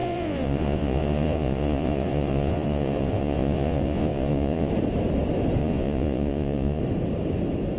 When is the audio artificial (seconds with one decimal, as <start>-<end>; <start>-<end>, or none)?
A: 0.0-4.7; 5.6-6.8